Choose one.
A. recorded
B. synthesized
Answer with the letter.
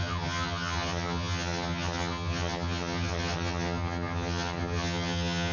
B